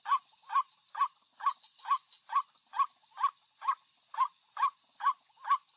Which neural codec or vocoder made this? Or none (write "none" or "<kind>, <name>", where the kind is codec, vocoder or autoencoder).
none